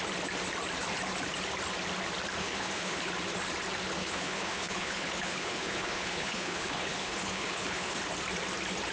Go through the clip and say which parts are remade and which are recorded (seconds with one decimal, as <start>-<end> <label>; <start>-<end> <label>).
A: 0.0-2.4 recorded; 2.4-3.1 remade; 3.1-4.0 recorded; 4.0-8.0 remade; 8.0-8.9 recorded